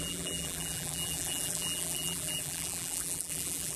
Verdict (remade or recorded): remade